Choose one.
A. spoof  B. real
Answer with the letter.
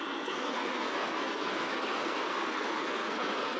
A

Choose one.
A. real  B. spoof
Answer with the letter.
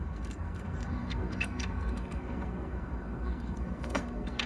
B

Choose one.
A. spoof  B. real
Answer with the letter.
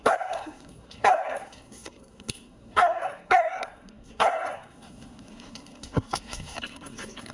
A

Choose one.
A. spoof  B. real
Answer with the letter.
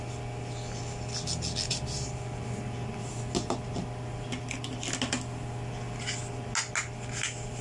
B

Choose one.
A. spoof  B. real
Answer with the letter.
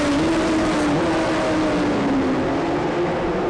B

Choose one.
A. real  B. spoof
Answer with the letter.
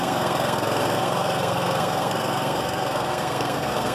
B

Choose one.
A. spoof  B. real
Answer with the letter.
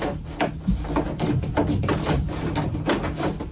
B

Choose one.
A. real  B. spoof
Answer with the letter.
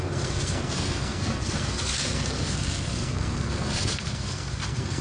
B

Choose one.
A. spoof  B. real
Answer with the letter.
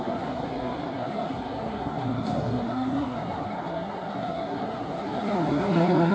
A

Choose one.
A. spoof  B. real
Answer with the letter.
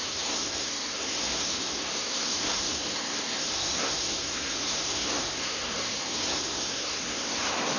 A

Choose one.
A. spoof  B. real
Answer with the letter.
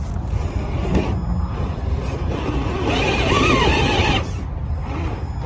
B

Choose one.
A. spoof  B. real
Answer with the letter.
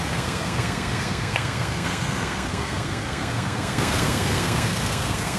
A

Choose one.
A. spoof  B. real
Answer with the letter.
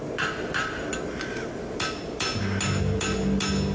B